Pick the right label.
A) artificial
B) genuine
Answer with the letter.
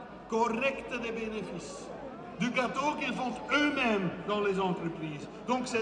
B